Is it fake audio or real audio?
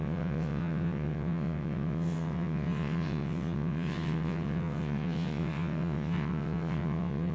fake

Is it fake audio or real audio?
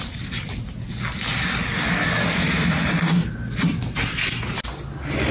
real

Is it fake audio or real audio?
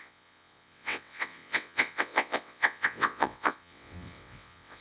fake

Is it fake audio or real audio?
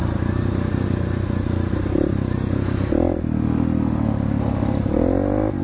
real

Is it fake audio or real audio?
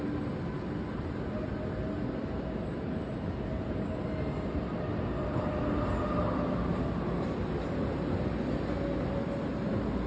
real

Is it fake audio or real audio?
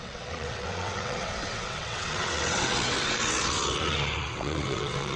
fake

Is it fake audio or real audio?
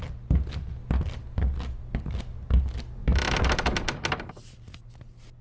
real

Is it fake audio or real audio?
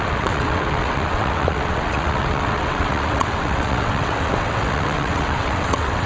fake